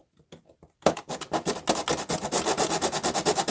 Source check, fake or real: real